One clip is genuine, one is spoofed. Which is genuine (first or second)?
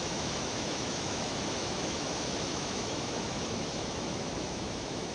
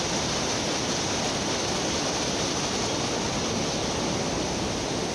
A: second